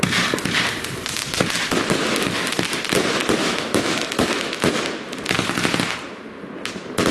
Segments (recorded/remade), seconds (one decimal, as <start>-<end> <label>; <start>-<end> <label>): 0.0-3.4 recorded; 3.4-4.6 remade; 4.6-7.1 recorded